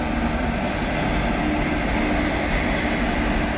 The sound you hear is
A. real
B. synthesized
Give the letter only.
A